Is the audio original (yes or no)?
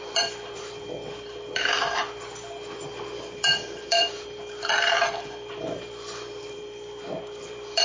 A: no